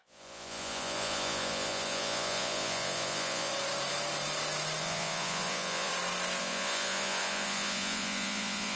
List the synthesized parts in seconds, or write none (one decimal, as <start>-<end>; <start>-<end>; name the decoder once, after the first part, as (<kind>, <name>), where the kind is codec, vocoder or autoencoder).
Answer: 0.0-3.5 (vocoder, Vocos); 4.8-5.9; 6.4-8.8